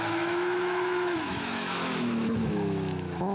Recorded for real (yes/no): no